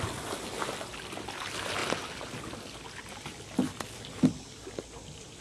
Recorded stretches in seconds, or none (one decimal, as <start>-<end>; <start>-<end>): 0.0-5.4